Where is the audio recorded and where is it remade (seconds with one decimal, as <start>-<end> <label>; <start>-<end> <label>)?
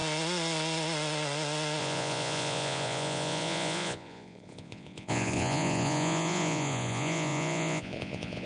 0.0-1.8 recorded; 1.8-8.5 remade